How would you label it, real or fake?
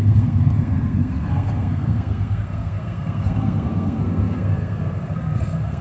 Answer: fake